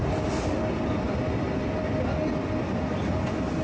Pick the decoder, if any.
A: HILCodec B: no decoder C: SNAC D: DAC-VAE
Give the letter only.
B